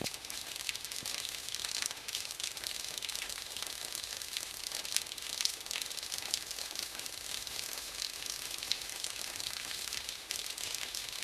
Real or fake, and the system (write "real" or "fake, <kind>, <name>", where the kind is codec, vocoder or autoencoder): fake, autoencoder, DAC-VAE